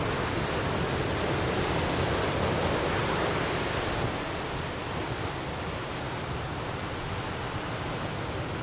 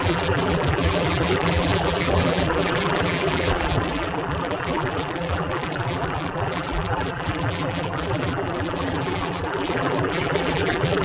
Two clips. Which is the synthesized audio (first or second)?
second